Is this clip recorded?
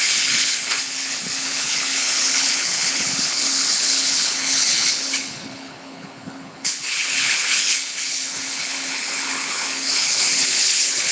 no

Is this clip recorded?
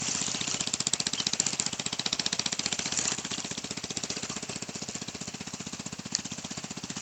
yes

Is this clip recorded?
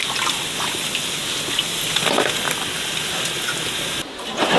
yes